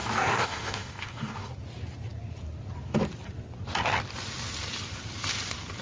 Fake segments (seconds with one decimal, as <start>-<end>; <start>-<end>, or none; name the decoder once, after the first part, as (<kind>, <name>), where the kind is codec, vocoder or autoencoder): 0.0-1.5 (codec, DAC)